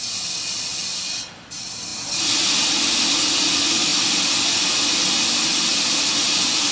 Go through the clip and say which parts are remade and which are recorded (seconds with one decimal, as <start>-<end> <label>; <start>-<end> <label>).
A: 0.0-0.7 recorded; 0.7-1.3 remade; 1.3-6.7 recorded